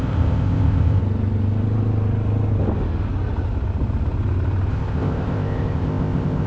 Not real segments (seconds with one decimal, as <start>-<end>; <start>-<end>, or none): 0.0-1.0; 4.7-6.5